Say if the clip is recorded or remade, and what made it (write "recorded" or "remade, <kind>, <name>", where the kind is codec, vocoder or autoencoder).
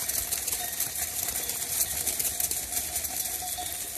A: remade, vocoder, BigVGAN v2